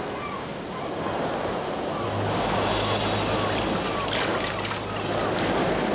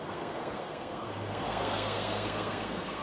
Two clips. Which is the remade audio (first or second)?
second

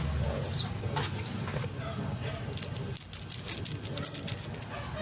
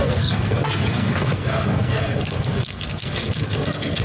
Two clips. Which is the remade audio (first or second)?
second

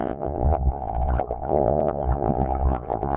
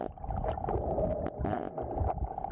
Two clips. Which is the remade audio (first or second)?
first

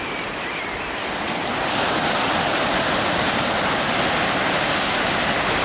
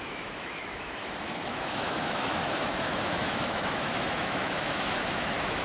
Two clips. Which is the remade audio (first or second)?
second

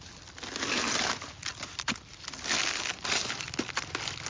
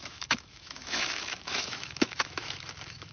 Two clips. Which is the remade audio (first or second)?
second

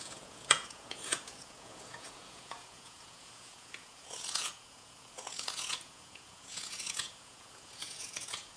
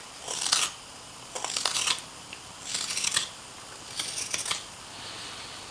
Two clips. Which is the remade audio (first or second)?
first